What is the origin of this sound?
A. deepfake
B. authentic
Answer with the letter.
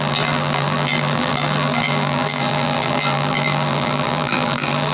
A